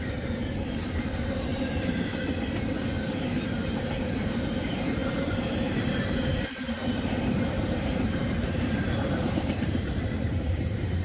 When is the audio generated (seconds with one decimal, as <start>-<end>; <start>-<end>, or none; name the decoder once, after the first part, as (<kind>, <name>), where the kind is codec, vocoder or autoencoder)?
0.0-1.5 (vocoder, BigVGAN v2); 3.1-11.0